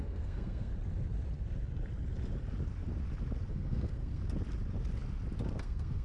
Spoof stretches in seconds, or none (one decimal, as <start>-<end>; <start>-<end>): 0.0-0.7; 3.5-4.2; 5.6-6.0